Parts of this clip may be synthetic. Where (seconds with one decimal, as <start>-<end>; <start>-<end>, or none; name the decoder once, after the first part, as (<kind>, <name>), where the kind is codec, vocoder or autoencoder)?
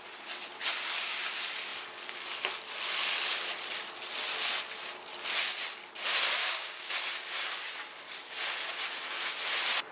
6.4-6.9 (codec, DAC)